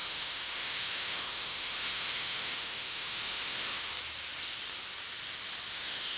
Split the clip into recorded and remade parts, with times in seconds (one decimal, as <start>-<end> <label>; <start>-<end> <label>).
0.0-3.9 remade; 3.9-5.7 recorded; 5.7-6.2 remade

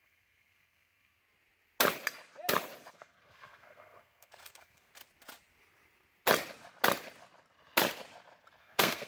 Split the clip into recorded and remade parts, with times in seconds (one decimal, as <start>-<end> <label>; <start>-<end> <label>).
0.0-1.2 remade; 1.2-2.9 recorded; 2.9-4.9 remade; 4.9-8.6 recorded; 8.6-9.1 remade

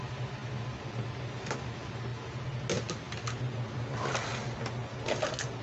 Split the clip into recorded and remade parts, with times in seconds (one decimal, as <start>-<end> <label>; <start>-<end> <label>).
0.0-5.6 recorded